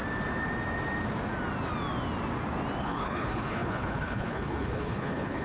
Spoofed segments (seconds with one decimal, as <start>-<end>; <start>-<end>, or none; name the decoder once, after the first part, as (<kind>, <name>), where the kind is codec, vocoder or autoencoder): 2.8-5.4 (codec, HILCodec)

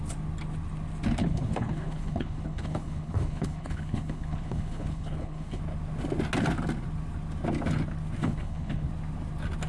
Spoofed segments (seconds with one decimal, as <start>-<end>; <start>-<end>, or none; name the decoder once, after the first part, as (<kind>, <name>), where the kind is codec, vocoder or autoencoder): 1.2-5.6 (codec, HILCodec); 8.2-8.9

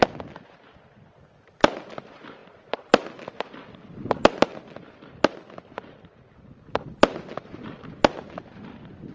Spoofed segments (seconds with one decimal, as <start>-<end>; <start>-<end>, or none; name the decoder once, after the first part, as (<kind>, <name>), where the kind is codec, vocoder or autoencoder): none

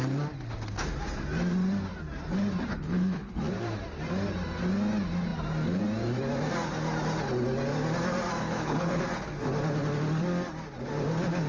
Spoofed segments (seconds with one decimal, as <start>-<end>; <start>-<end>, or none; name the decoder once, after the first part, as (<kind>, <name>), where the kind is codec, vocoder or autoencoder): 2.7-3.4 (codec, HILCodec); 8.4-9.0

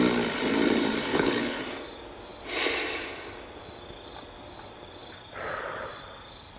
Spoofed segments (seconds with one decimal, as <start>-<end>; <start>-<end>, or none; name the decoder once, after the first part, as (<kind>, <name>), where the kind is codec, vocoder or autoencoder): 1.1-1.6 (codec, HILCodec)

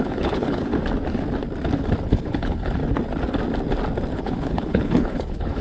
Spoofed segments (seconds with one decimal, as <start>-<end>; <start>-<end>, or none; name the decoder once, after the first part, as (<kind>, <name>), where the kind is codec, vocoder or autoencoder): 0.0-0.7 (codec, HILCodec); 2.1-2.8; 4.1-5.6

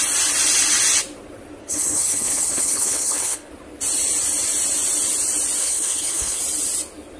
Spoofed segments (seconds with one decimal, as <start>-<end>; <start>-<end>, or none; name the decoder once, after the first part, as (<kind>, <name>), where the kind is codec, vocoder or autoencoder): 1.6-3.5 (codec, HILCodec); 5.6-6.4